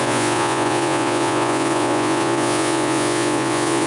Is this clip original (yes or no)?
no